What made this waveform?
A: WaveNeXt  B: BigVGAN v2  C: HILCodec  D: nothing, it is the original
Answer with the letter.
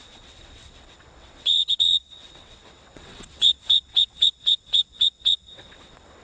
A